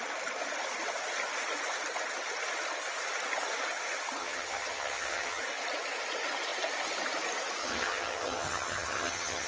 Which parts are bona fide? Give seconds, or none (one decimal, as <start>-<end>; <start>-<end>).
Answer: 0.0-4.2; 5.4-7.6